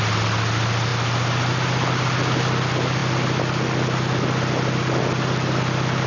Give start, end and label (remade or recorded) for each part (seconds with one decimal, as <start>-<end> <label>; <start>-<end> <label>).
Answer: 0.0-6.1 recorded